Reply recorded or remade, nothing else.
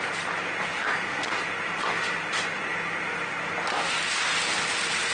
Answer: recorded